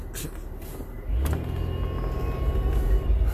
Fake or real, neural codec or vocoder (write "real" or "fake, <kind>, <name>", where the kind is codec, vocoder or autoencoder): real